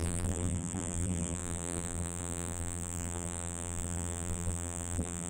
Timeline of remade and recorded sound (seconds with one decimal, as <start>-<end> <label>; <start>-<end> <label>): 0.0-5.3 remade